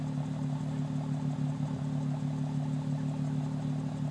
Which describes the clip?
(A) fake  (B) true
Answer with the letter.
B